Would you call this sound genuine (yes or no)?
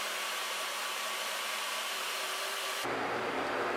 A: no